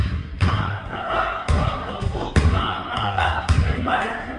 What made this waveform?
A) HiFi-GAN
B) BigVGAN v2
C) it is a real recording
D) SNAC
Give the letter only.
D